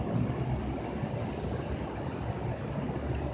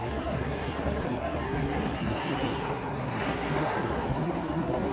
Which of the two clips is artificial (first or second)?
second